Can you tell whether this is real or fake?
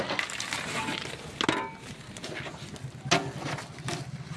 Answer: real